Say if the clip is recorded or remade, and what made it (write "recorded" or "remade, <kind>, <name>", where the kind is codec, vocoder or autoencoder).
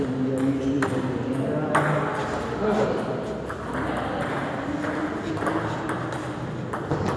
recorded